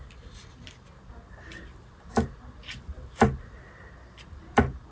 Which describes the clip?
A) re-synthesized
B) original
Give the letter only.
B